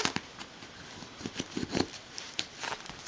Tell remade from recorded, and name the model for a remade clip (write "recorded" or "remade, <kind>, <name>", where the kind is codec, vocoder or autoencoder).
recorded